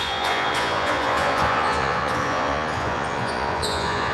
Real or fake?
fake